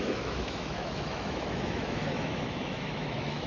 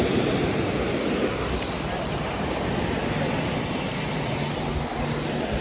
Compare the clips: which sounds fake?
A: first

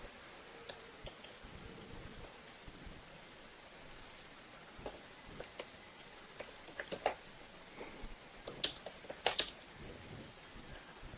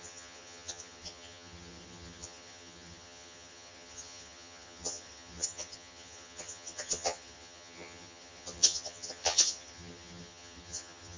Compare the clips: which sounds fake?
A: second